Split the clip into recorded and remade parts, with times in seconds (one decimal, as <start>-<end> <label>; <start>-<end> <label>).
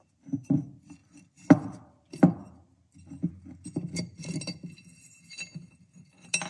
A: 0.0-6.5 recorded